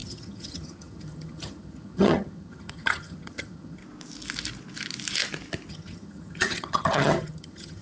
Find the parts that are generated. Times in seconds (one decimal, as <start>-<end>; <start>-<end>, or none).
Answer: 0.0-3.8; 5.7-7.8